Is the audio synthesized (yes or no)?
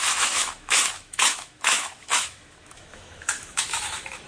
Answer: yes